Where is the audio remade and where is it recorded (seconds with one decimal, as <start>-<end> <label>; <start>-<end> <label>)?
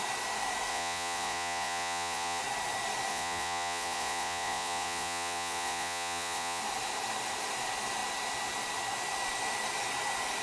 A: 0.0-0.7 recorded; 0.7-2.4 remade; 2.4-3.1 recorded; 3.1-6.6 remade; 6.6-10.4 recorded